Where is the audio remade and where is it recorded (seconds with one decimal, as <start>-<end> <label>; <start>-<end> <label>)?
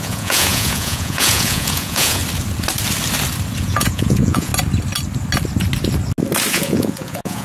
0.0-2.2 remade; 2.2-3.6 recorded; 3.6-4.5 remade; 4.5-6.5 recorded; 6.5-7.4 remade